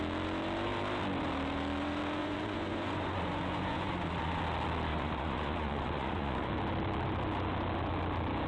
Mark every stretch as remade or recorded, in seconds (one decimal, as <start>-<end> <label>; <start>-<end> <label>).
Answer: 0.0-2.2 recorded; 2.2-4.4 remade; 4.4-4.9 recorded; 4.9-6.5 remade; 6.5-8.5 recorded